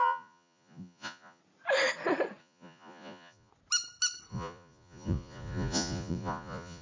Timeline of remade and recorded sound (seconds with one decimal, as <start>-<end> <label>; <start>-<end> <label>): 0.0-1.4 remade; 1.4-2.4 recorded; 2.4-3.5 remade; 3.5-4.3 recorded; 4.3-6.8 remade